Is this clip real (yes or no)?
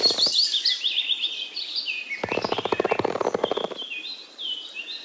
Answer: yes